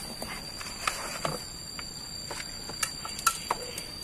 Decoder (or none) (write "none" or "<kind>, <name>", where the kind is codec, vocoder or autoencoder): none